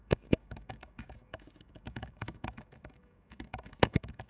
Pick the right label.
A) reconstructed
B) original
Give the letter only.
A